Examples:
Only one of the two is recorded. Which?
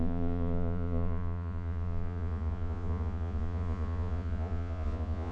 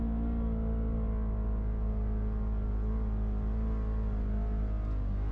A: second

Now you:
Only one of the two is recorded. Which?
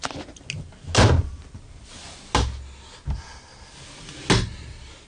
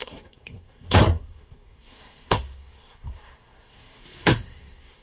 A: first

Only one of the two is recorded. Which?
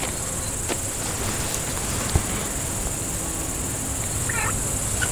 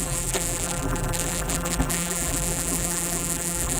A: first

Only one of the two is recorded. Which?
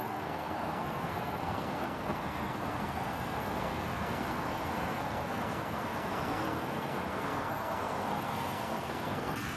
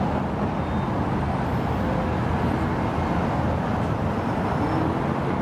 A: second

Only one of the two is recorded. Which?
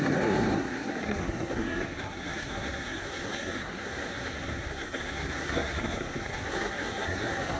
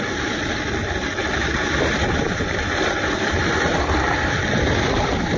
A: second